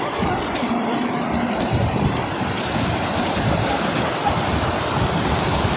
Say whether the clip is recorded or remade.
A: remade